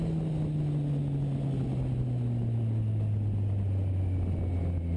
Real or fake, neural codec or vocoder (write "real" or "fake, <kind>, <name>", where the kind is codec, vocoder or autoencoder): real